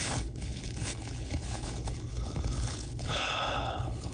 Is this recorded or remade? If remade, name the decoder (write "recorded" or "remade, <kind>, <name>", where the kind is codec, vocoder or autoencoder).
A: remade, codec, HILCodec